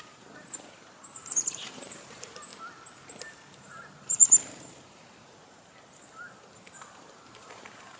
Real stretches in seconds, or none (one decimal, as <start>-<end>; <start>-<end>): 2.5-3.2

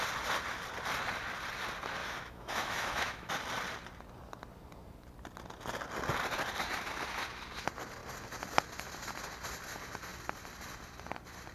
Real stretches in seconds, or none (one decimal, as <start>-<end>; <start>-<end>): 0.0-2.0; 3.3-11.5

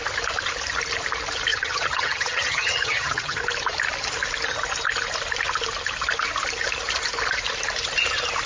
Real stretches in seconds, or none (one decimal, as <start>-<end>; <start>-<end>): 0.0-1.5; 3.4-8.5

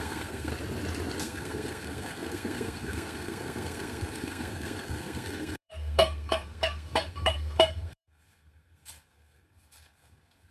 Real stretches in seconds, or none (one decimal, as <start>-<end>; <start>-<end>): 0.5-1.2